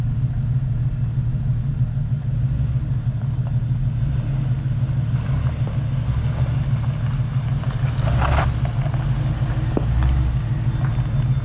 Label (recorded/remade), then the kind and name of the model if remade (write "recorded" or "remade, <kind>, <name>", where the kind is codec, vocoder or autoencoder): recorded